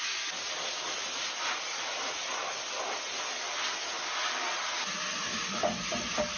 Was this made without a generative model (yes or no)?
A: yes